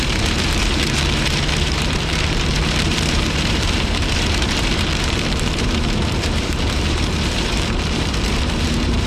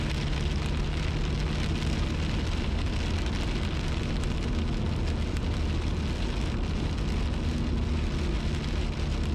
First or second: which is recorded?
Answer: second